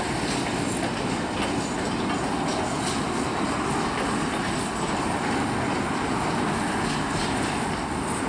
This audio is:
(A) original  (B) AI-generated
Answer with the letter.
A